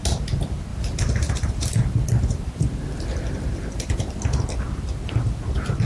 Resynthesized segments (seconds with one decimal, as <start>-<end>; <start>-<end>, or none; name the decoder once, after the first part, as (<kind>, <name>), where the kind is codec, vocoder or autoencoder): 0.7-4.2 (vocoder, BigVGAN v2)